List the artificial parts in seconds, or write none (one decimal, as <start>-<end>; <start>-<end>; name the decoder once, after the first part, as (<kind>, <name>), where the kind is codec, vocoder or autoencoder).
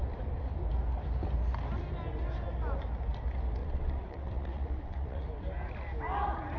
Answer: 3.6-5.2 (vocoder, WaveNeXt)